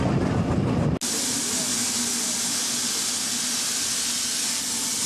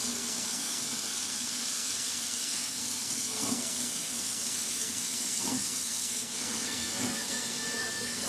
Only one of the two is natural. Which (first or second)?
first